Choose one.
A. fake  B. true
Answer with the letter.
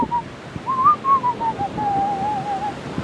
B